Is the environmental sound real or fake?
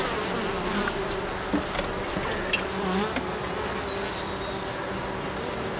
real